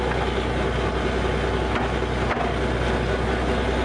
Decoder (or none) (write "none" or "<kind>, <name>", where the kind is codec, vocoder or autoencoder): none